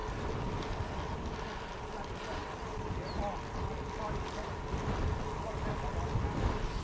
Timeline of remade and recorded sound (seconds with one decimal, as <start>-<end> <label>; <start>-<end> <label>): 0.0-6.8 recorded